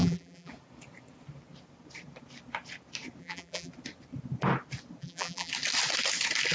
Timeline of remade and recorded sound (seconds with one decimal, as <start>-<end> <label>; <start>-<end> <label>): 0.0-0.5 remade; 0.5-3.2 recorded; 3.2-3.7 remade; 3.7-5.0 recorded; 5.0-5.5 remade; 5.5-6.5 recorded